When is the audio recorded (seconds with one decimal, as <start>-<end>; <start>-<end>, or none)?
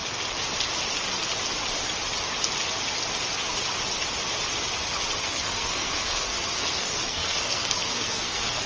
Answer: 0.0-5.2